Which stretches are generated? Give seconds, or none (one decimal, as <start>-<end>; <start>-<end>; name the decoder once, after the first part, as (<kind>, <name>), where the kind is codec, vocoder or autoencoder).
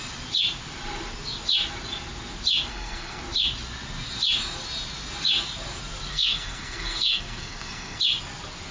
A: 2.7-3.2 (codec, SNAC); 6.1-8.0